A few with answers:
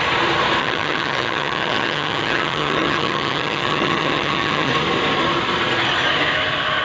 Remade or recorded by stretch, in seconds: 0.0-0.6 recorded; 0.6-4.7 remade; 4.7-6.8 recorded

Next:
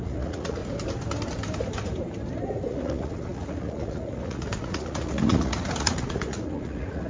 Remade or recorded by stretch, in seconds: 0.0-0.6 remade; 0.6-2.7 recorded; 2.7-7.1 remade

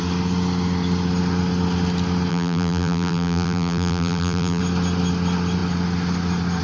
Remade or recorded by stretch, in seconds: 0.0-2.3 recorded; 2.3-4.6 remade; 4.6-6.6 recorded

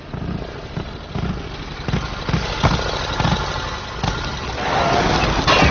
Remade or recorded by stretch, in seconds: 0.0-5.7 recorded